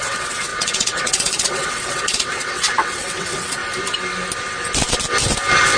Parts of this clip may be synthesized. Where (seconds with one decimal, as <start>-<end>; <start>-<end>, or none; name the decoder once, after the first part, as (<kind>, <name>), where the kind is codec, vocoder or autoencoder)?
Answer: 0.0-3.6 (vocoder, WaveNeXt)